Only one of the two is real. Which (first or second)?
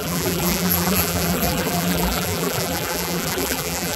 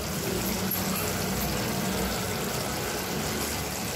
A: second